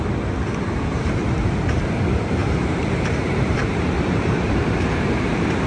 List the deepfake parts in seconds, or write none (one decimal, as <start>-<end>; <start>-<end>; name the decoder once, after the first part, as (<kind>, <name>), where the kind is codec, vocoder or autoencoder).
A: 0.9-1.6 (vocoder, BigVGAN v2); 2.4-5.7